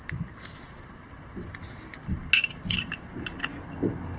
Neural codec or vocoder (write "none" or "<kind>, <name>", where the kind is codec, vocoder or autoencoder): none